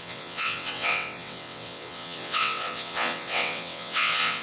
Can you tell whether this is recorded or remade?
remade